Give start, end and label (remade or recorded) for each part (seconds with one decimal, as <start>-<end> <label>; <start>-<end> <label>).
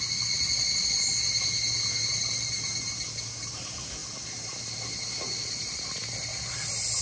0.0-7.0 recorded